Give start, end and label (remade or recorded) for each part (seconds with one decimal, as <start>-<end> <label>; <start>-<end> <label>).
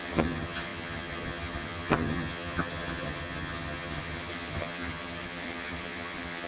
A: 0.0-6.5 remade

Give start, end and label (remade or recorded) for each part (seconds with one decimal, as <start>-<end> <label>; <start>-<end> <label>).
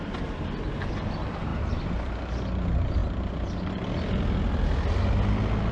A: 0.0-1.5 recorded; 1.5-2.1 remade; 2.1-5.7 recorded